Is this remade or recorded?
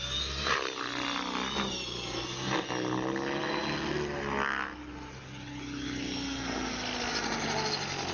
recorded